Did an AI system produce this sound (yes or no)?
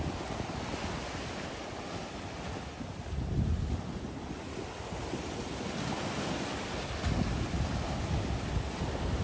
no